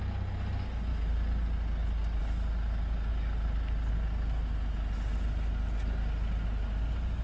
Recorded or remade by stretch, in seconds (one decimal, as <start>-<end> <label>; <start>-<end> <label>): 0.0-7.2 recorded